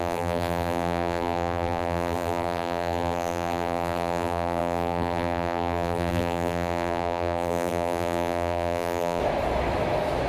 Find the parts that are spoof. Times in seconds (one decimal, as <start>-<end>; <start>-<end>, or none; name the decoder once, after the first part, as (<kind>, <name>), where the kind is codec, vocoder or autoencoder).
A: 0.0-9.2 (vocoder, BigVGAN v2)